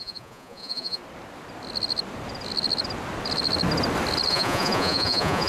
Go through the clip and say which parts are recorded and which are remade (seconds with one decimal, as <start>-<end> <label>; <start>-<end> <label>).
0.0-1.0 remade; 1.0-4.3 recorded; 4.3-5.5 remade